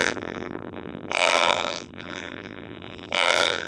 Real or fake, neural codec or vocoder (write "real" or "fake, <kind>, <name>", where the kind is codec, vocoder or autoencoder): fake, vocoder, BigVGAN v2